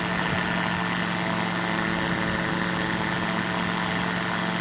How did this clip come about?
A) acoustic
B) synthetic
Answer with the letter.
A